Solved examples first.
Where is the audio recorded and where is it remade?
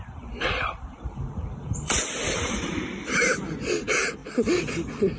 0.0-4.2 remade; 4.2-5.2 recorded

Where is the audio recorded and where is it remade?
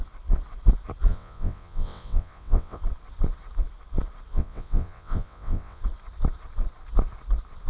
0.0-1.1 recorded; 1.1-2.8 remade; 2.8-4.3 recorded; 4.3-5.8 remade; 5.8-7.7 recorded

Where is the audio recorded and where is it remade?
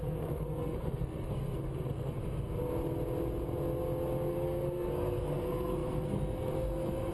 0.0-2.2 remade; 2.2-4.3 recorded; 4.3-7.1 remade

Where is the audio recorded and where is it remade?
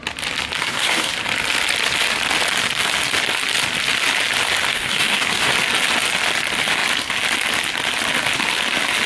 0.0-0.6 recorded; 0.6-1.1 remade; 1.1-4.7 recorded; 4.7-5.5 remade; 5.5-9.1 recorded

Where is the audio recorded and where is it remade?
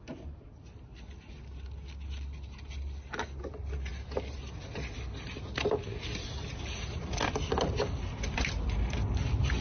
0.0-9.6 recorded